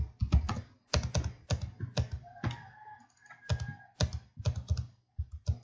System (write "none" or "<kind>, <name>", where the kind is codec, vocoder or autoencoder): none